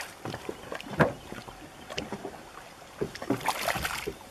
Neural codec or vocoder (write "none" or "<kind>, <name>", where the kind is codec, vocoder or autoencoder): none